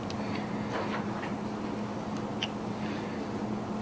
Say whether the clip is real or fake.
real